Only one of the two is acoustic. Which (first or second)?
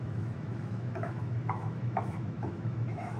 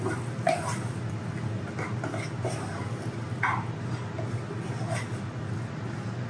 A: second